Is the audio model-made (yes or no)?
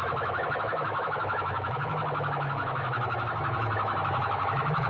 yes